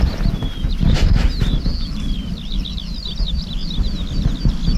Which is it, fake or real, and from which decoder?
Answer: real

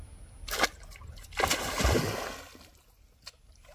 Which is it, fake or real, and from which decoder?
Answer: real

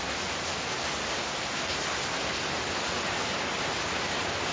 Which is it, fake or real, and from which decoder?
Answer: real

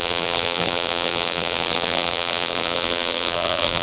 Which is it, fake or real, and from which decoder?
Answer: fake, vocoder, BigVGAN v2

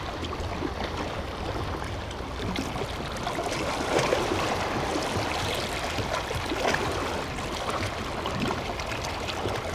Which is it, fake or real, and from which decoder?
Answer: real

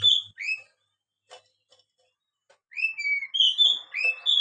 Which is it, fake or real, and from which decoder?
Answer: real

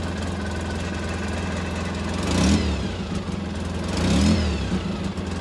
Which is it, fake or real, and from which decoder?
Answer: real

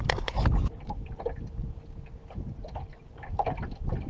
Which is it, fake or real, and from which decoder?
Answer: real